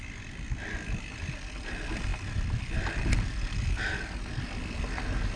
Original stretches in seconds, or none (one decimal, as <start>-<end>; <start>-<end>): 0.0-5.4